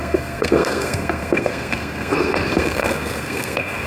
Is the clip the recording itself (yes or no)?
no